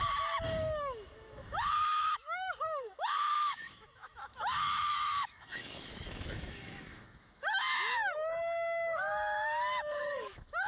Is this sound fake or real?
fake